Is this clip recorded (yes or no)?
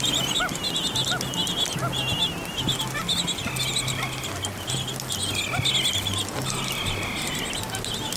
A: yes